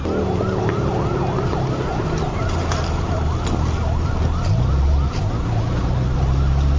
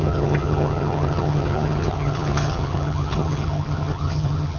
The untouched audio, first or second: first